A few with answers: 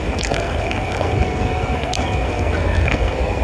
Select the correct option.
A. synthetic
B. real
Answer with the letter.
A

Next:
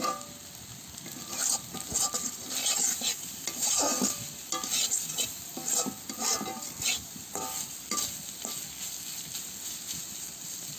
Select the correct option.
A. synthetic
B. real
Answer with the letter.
B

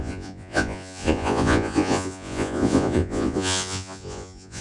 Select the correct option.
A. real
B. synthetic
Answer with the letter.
B